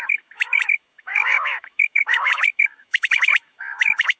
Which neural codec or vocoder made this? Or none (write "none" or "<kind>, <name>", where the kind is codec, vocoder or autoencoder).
autoencoder, DAC-VAE